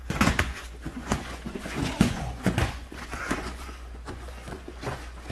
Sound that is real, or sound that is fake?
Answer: fake